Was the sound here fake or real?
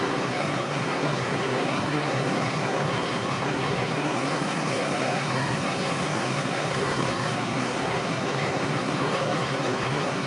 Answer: fake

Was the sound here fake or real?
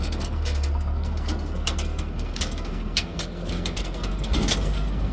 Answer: fake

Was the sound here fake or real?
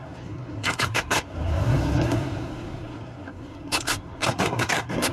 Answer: fake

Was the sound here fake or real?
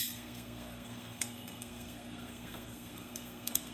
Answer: fake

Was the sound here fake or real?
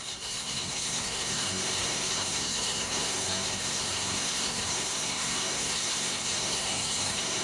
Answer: fake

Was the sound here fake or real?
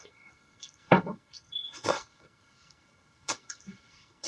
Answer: fake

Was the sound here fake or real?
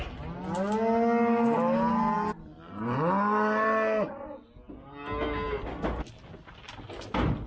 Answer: real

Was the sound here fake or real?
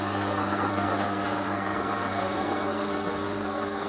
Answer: fake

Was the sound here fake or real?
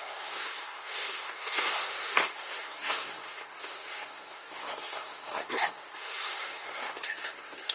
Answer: fake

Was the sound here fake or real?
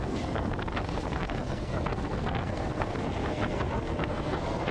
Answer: fake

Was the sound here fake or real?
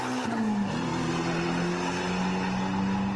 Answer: real